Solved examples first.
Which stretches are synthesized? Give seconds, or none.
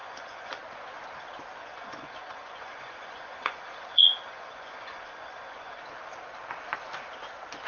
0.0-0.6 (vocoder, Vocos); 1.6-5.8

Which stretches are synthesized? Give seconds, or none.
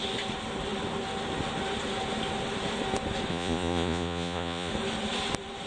3.3-4.7 (vocoder, Vocos)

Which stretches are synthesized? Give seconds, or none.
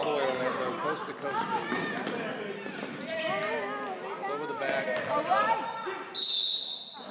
none